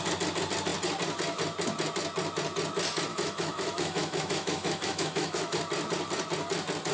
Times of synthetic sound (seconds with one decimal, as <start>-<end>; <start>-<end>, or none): 3.1-5.6